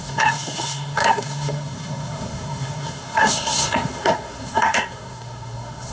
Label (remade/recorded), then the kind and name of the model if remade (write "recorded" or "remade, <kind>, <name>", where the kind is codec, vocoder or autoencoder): remade, codec, SNAC